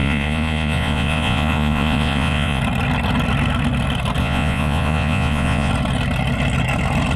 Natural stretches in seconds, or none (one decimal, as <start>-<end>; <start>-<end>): 2.6-4.2; 5.7-7.2